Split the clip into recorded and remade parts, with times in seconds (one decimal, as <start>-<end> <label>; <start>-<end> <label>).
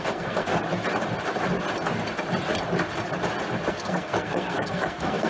0.0-0.5 remade; 0.5-3.7 recorded; 3.7-5.3 remade